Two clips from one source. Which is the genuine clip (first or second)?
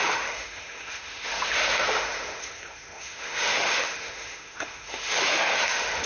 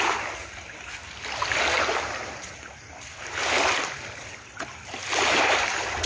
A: second